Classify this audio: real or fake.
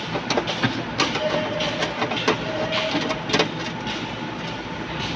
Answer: real